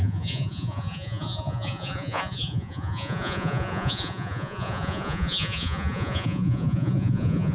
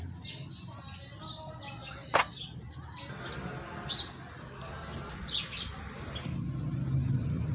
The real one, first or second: second